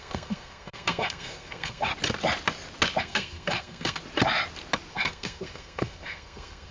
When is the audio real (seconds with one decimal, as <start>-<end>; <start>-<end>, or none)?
1.9-3.0; 4.0-4.9